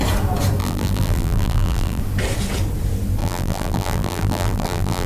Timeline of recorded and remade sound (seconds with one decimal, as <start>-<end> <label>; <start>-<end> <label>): 0.0-0.6 recorded; 0.6-2.0 remade; 2.0-3.2 recorded; 3.2-5.1 remade